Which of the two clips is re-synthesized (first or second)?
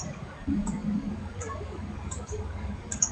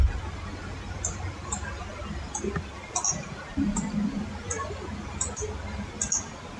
first